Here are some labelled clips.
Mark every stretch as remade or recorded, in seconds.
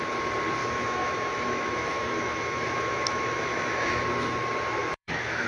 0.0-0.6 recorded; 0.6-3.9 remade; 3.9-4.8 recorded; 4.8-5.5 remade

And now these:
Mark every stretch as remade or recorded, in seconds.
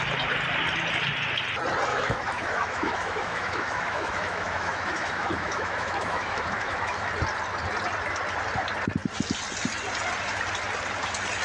0.0-1.9 recorded; 1.9-7.1 remade; 7.1-11.4 recorded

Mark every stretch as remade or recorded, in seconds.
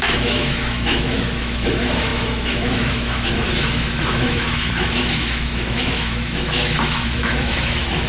0.0-8.1 remade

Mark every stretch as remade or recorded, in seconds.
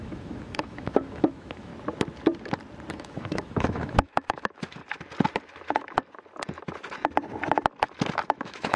0.0-1.7 remade; 1.7-2.9 recorded; 2.9-4.8 remade; 4.8-8.4 recorded; 8.4-8.8 remade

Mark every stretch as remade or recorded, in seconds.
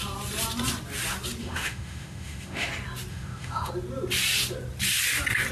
0.0-1.4 recorded; 1.4-2.7 remade; 2.7-3.1 recorded; 3.1-3.7 remade; 3.7-5.5 recorded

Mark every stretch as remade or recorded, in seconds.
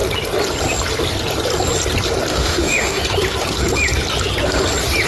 0.0-2.3 recorded; 2.3-3.0 remade; 3.0-5.1 recorded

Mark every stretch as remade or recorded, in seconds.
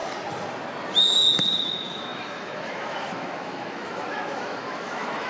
0.0-1.6 recorded; 1.6-5.3 remade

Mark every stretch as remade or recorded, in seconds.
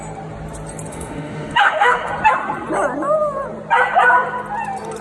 0.0-0.9 recorded; 0.9-2.1 remade; 2.1-5.0 recorded